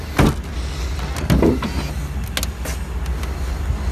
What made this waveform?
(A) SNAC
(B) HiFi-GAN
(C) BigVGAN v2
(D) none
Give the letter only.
D